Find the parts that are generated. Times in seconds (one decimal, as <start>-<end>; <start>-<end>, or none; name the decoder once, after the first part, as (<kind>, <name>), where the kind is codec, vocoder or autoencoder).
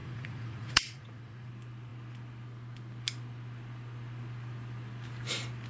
0.0-1.5 (vocoder, Vocos)